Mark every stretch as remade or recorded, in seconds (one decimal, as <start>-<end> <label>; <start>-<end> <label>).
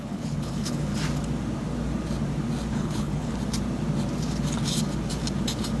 0.0-0.9 remade; 0.9-2.7 recorded; 2.7-3.3 remade; 3.3-5.8 recorded